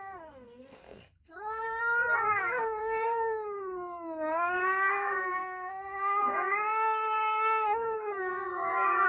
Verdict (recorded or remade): remade